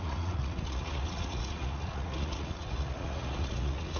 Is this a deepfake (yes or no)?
yes